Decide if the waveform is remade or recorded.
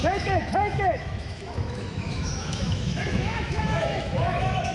remade